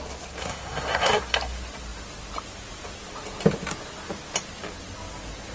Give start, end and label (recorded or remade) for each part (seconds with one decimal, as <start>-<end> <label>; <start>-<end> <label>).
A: 0.0-0.4 recorded; 0.4-1.2 remade; 1.2-5.5 recorded